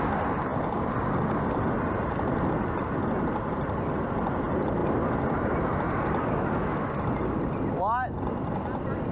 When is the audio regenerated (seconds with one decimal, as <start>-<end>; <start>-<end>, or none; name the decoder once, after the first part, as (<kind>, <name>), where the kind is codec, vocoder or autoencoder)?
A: none